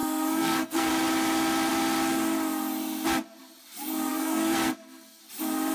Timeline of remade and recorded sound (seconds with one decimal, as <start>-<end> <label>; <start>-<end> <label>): 0.0-0.9 remade; 0.9-4.1 recorded; 4.1-5.2 remade; 5.2-5.7 recorded